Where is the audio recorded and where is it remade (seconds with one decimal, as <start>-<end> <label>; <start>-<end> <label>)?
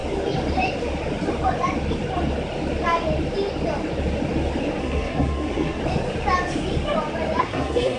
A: 0.0-4.8 recorded; 4.8-5.8 remade; 5.8-7.4 recorded; 7.4-8.0 remade